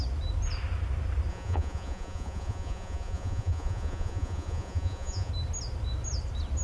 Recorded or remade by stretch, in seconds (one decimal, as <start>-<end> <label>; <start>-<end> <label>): 0.0-1.3 recorded; 1.3-5.3 remade; 5.3-6.6 recorded